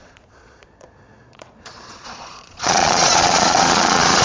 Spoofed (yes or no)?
yes